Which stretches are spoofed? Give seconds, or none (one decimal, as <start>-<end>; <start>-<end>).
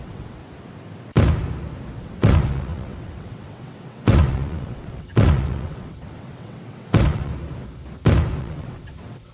0.0-0.4; 2.0-7.3; 8.4-9.3